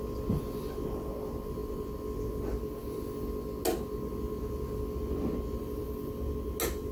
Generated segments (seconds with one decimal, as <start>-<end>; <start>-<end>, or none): none